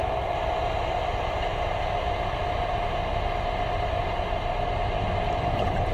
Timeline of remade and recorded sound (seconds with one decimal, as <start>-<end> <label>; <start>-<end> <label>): 0.0-5.9 recorded